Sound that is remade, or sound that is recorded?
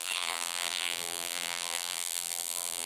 remade